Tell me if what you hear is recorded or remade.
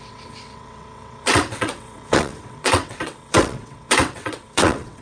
remade